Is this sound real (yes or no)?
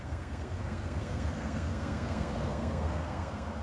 no